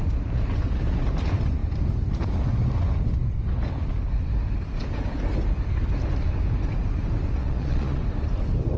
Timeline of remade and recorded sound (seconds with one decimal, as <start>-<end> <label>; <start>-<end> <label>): 0.0-7.4 recorded; 7.4-8.0 remade; 8.0-8.8 recorded